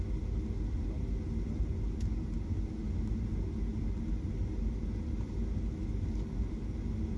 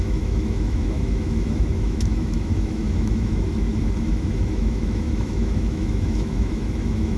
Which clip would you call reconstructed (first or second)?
second